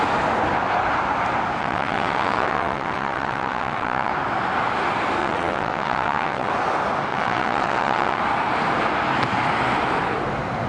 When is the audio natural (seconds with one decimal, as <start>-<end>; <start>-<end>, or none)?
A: 0.0-1.6; 4.1-5.2; 6.5-7.1; 8.2-10.7